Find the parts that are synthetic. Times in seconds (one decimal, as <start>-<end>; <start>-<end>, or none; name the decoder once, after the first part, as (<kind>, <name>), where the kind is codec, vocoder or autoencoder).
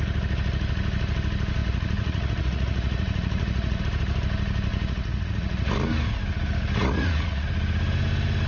1.6-3.8 (vocoder, Vocos); 4.7-5.7; 6.8-7.5